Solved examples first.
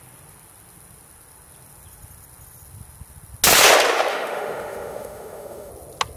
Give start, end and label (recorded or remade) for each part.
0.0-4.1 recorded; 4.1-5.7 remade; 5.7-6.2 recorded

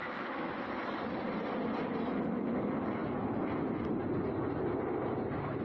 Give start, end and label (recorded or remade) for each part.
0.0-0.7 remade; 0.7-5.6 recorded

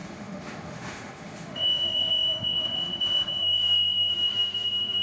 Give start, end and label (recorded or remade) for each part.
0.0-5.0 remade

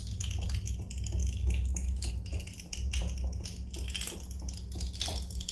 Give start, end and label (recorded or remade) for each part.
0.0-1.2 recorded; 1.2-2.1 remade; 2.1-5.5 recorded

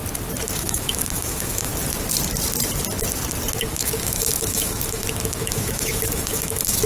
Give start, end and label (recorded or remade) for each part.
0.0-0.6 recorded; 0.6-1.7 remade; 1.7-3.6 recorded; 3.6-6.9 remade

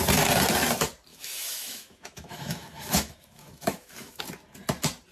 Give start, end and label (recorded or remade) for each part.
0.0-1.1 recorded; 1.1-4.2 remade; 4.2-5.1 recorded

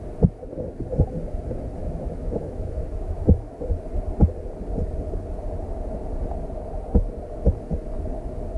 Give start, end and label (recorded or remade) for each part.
0.0-1.8 recorded; 1.8-3.7 remade; 3.7-8.6 recorded